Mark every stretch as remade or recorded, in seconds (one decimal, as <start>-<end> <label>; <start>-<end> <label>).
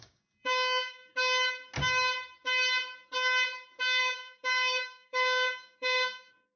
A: 0.0-1.0 remade; 1.0-4.0 recorded; 4.0-6.6 remade